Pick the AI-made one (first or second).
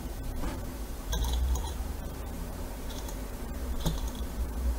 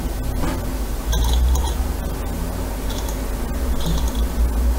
first